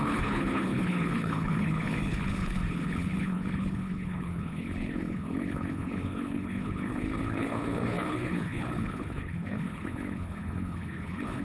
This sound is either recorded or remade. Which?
remade